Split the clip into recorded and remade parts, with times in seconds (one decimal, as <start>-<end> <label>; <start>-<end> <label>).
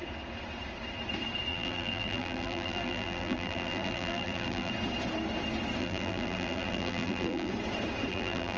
0.0-1.5 recorded; 1.5-4.7 remade; 4.7-5.8 recorded; 5.8-7.5 remade; 7.5-8.1 recorded; 8.1-8.6 remade